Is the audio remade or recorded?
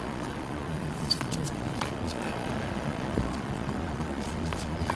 remade